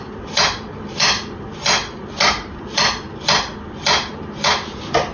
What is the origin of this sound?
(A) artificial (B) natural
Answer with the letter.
B